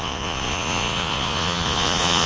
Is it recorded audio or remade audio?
remade